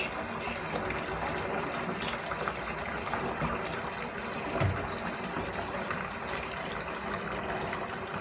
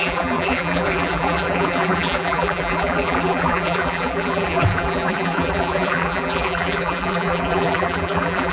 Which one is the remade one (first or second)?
second